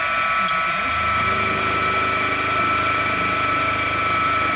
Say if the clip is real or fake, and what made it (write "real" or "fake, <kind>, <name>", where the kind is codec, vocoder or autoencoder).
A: real